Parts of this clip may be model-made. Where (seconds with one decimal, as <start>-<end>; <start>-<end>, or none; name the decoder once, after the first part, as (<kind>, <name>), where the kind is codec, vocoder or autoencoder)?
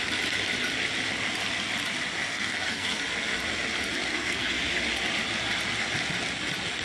2.3-3.0 (codec, SNAC); 4.1-4.8